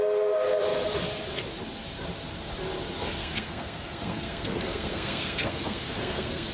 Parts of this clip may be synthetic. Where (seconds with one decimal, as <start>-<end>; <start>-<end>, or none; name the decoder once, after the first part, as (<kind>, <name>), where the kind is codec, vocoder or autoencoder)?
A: 3.2-6.5 (codec, SNAC)

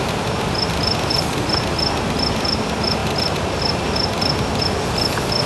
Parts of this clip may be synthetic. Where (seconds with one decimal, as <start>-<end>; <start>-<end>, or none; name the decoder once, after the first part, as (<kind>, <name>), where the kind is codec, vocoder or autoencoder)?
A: none